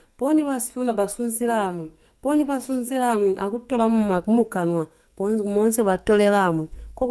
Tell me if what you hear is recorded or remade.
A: remade